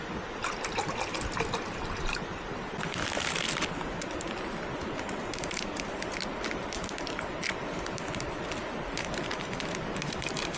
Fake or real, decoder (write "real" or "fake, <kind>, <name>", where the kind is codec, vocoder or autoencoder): real